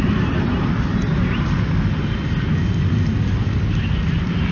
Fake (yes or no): no